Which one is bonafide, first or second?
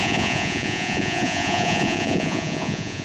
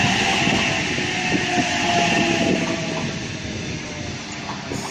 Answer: second